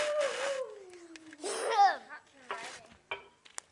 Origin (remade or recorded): recorded